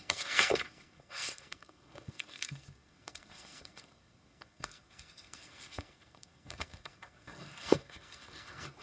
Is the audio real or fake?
fake